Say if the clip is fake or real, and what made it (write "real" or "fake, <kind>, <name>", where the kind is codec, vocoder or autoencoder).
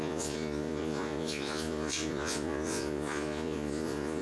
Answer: fake, vocoder, Vocos